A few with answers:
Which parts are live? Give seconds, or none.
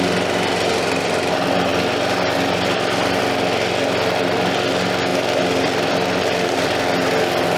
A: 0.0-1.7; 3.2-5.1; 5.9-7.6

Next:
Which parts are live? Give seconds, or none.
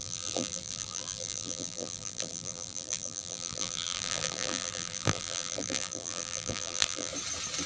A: 7.1-7.7